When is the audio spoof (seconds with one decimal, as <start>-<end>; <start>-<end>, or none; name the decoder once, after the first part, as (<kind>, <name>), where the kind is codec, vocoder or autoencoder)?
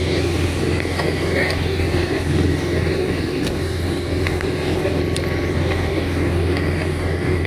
0.0-5.0 (codec, DAC); 5.5-7.5